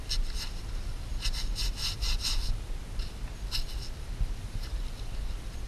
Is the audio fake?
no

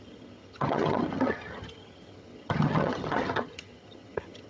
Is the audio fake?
yes